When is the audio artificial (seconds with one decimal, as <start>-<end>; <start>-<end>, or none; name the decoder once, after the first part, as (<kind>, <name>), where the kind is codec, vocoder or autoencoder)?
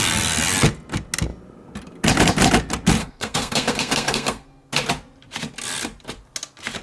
3.0-4.7 (codec, SNAC)